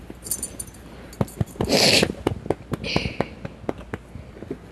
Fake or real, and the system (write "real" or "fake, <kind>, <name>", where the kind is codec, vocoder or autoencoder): real